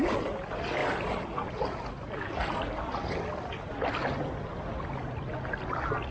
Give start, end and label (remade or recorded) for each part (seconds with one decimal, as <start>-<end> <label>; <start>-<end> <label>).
0.0-6.1 recorded